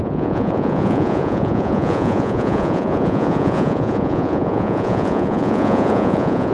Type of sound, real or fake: fake